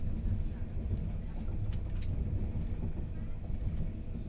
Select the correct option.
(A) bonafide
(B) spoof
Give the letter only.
A